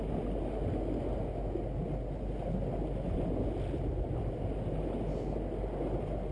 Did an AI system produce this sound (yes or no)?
no